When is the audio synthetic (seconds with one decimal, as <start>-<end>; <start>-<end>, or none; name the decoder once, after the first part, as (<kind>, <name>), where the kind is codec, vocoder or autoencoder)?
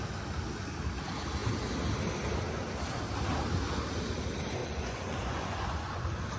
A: 4.6-6.0 (vocoder, Vocos)